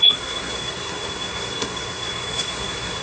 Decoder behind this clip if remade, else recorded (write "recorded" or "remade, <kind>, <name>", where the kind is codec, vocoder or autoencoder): remade, codec, SNAC